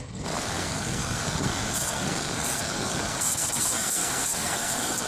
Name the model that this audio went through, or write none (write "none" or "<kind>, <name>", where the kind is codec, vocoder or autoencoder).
codec, SNAC